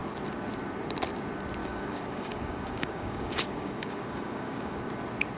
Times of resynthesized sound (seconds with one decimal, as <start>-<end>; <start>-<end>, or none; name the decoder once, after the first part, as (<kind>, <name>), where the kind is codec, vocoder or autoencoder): 1.6-4.8 (codec, DAC)

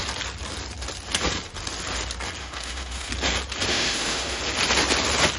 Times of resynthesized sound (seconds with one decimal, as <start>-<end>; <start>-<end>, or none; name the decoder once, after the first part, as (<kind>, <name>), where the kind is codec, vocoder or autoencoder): 2.4-3.1 (autoencoder, DAC-VAE); 3.7-4.4

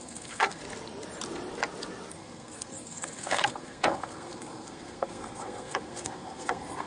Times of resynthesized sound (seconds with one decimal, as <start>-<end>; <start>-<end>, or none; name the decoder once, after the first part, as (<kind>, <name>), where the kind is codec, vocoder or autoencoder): 0.0-0.6 (codec, SNAC); 2.1-6.9

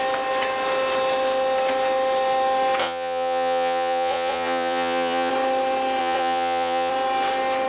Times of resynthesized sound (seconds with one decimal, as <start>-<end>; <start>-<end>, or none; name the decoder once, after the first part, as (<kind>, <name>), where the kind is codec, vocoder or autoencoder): 2.8-5.3 (vocoder, Vocos); 6.0-6.9

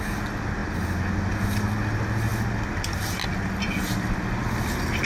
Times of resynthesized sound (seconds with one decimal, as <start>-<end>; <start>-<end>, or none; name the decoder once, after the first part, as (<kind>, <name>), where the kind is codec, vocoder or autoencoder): none